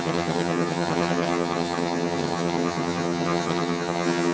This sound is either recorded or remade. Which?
remade